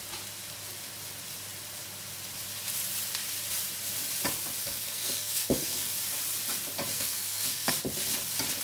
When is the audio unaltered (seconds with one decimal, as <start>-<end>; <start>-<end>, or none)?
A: 0.0-4.6; 5.9-6.9; 7.7-8.6